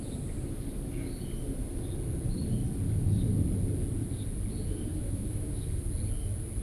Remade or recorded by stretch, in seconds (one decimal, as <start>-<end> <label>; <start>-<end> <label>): 0.0-4.9 recorded; 4.9-5.6 remade; 5.6-6.6 recorded